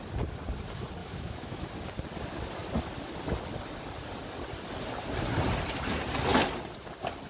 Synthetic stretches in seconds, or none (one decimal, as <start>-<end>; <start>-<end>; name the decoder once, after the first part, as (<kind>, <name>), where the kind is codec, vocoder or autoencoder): 1.0-1.7 (autoencoder, DAC-VAE)